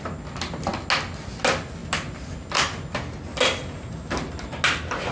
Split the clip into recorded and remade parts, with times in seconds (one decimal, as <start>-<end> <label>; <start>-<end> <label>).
0.0-5.1 recorded